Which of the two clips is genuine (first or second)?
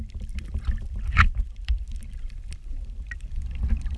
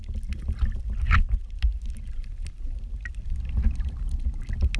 second